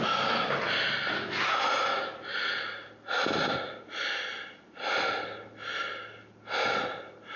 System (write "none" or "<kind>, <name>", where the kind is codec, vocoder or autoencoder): none